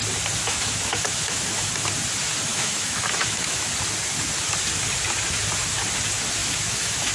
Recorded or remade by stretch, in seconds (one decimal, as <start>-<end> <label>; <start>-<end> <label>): 0.0-0.4 recorded; 0.4-1.7 remade; 1.7-2.5 recorded; 2.5-3.7 remade; 3.7-6.4 recorded; 6.4-7.1 remade